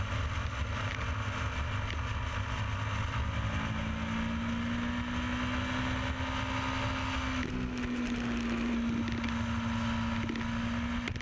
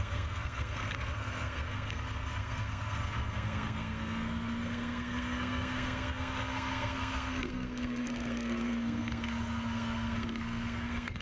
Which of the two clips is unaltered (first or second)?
first